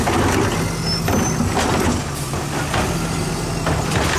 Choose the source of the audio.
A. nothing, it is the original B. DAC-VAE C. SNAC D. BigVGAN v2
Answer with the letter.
A